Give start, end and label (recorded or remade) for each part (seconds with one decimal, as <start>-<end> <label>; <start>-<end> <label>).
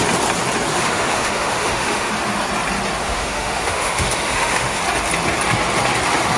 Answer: 0.0-0.7 recorded; 0.7-2.1 remade; 2.1-3.0 recorded; 3.0-4.8 remade; 4.8-6.4 recorded